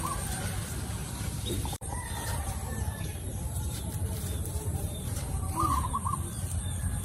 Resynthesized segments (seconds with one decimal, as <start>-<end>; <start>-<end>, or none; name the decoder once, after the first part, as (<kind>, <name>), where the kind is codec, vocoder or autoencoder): 1.0-3.9 (vocoder, BigVGAN v2); 4.7-6.2